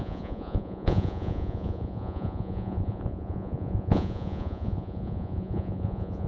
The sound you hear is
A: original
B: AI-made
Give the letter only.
B